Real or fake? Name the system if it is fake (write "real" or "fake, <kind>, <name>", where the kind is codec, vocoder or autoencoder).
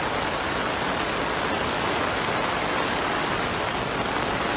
real